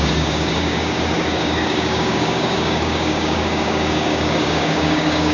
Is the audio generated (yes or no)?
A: yes